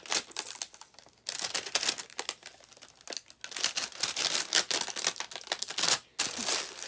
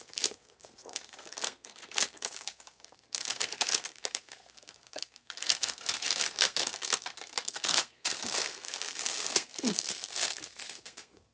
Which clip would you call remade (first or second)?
second